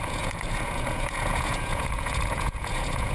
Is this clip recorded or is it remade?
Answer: remade